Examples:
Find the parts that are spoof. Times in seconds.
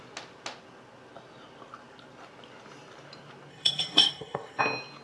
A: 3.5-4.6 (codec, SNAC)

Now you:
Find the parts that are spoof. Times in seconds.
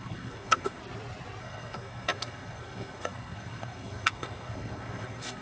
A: 0.0-0.8 (codec, SNAC); 1.4-5.4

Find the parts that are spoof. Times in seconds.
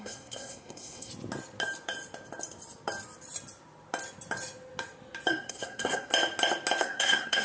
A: 0.0-1.1 (codec, SNAC); 5.3-6.1; 6.8-7.4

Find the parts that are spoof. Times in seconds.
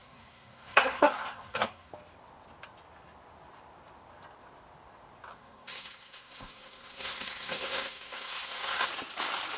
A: 0.0-1.9 (codec, SNAC); 5.3-8.9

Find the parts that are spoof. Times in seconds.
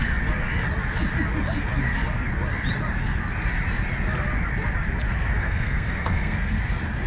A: 5.4-6.6 (codec, SNAC)